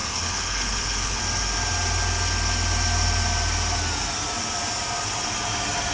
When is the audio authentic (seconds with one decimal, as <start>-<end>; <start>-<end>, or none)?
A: 1.2-5.9